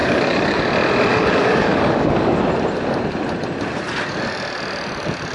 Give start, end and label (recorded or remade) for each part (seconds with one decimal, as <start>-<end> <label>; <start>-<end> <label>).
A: 0.0-0.6 remade; 0.6-1.1 recorded; 1.1-2.4 remade; 2.4-5.3 recorded